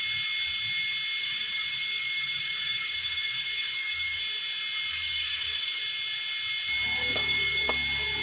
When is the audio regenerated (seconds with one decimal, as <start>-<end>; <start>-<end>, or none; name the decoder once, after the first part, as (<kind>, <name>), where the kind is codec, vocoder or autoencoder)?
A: 1.2-4.2 (codec, DAC); 4.9-5.8; 7.0-7.7